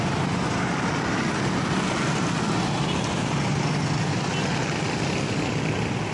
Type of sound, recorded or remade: recorded